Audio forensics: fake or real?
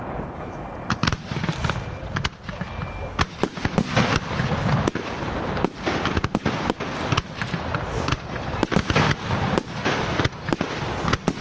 real